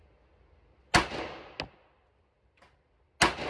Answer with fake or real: real